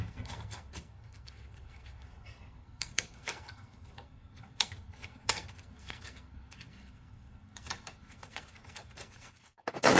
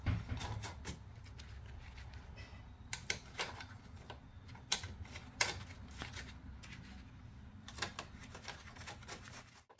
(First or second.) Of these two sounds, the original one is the second